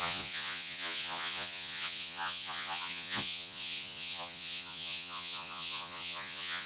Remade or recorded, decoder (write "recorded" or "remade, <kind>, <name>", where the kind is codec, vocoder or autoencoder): remade, vocoder, Vocos